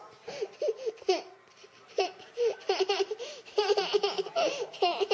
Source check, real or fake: fake